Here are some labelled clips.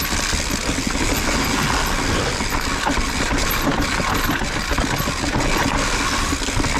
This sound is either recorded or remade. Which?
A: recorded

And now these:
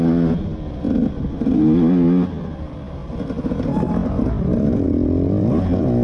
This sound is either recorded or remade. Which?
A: recorded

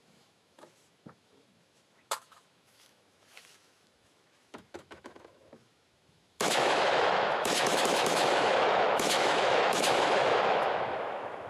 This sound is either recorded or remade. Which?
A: remade